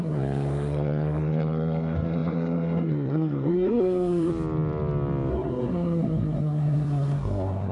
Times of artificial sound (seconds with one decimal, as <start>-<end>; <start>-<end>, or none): 0.0-4.3; 5.3-7.7